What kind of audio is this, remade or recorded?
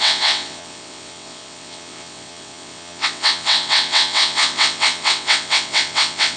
remade